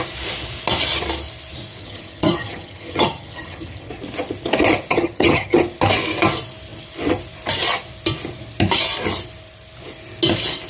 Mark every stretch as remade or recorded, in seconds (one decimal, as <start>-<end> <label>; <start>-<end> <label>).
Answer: 0.0-1.8 recorded; 1.8-3.9 remade; 3.9-4.9 recorded; 4.9-5.6 remade; 5.6-10.7 recorded